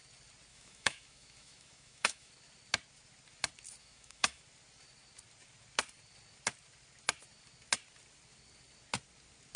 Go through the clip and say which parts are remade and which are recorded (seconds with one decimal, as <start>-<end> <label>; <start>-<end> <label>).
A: 0.0-0.5 recorded; 0.5-2.3 remade; 2.3-3.8 recorded; 3.8-4.4 remade; 4.4-9.6 recorded